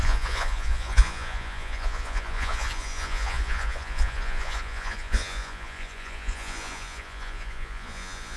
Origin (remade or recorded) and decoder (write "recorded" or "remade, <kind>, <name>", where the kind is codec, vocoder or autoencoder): remade, vocoder, Vocos